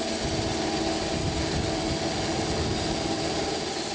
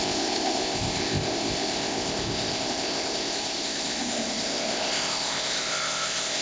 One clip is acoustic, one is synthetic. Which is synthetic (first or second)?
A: second